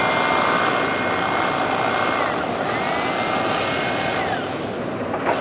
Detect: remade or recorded recorded